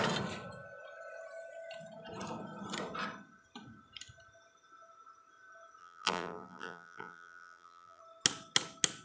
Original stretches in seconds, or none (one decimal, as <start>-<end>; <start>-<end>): 0.0-5.8; 8.0-9.0